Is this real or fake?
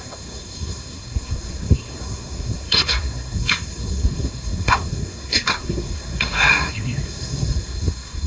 fake